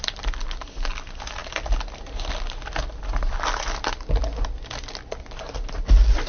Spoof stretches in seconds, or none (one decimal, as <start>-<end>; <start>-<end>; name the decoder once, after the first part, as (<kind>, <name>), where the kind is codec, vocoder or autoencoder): none